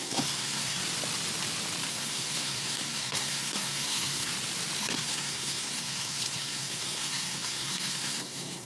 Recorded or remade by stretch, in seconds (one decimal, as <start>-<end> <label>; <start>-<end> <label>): 0.0-0.8 remade; 0.8-1.9 recorded; 1.9-4.3 remade; 4.3-4.8 recorded; 4.8-8.7 remade